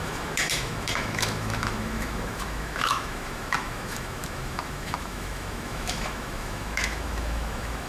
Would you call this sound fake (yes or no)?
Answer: yes